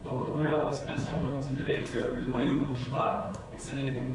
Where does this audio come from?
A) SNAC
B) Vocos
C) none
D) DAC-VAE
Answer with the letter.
A